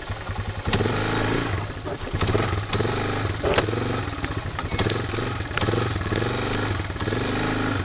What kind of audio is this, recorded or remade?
recorded